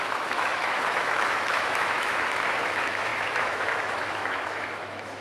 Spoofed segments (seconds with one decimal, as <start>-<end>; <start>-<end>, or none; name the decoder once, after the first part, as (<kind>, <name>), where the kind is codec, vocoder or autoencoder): 0.0-5.2 (autoencoder, DAC-VAE)